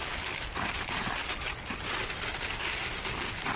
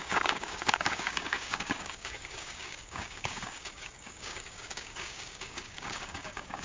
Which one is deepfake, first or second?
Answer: second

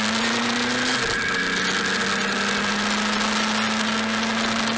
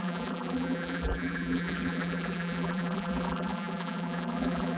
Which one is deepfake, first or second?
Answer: second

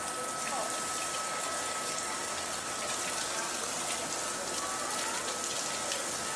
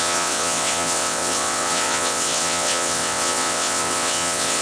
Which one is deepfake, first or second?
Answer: second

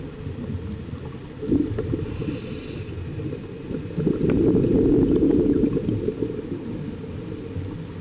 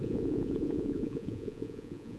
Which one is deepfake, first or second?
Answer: second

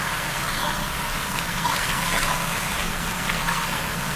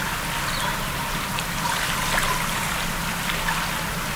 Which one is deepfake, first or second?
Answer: first